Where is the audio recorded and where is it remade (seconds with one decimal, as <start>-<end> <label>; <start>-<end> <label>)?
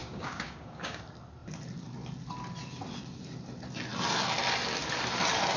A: 0.0-1.0 remade; 1.0-5.6 recorded